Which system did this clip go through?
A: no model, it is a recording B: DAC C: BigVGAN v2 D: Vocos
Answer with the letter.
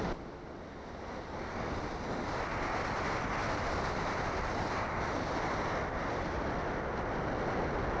A